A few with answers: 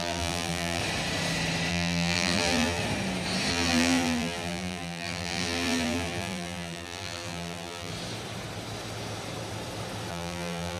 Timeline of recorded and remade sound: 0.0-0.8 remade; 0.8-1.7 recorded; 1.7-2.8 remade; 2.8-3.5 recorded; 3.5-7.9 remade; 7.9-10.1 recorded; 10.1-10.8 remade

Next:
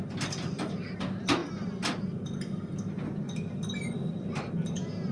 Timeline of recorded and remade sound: 0.0-5.1 recorded

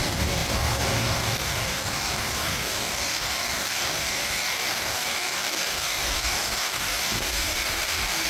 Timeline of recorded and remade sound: 0.0-8.3 remade